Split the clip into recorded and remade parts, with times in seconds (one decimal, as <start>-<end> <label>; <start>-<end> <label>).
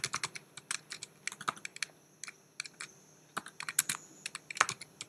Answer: 0.0-5.1 recorded